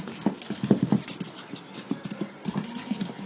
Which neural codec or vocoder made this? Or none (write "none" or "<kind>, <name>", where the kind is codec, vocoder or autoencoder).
none